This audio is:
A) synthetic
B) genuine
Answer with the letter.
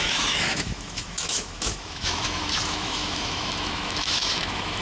A